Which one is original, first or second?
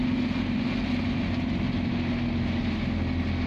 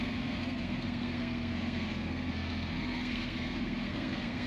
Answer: first